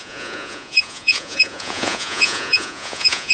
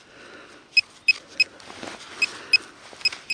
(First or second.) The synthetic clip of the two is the first